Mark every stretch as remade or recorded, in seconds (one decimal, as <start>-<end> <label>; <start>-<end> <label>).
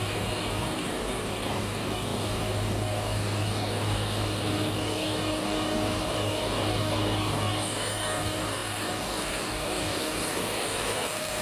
0.0-11.4 remade